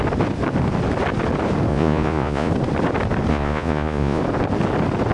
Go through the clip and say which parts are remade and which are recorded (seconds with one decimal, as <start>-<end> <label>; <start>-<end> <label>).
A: 0.0-1.7 recorded; 1.7-2.5 remade; 2.5-3.3 recorded; 3.3-4.2 remade; 4.2-5.1 recorded